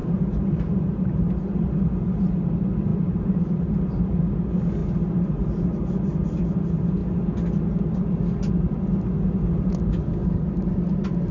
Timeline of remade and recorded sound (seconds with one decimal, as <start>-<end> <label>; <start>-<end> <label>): 0.0-1.4 remade; 1.4-2.9 recorded; 2.9-3.7 remade; 3.7-4.8 recorded; 4.8-5.9 remade; 5.9-11.3 recorded